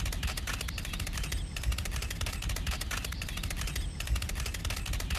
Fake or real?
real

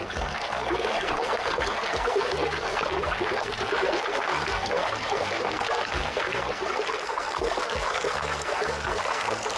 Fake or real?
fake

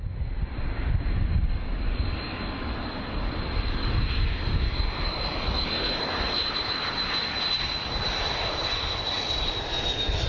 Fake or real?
real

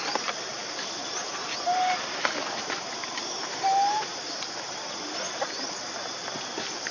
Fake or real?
real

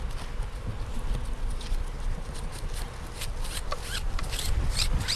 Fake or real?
real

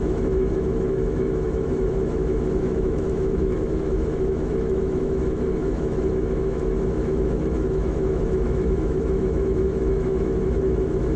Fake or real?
fake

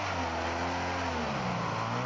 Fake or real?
real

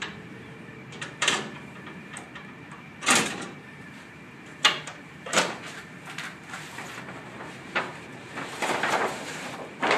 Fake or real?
fake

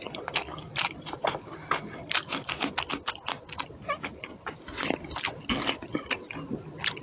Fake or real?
real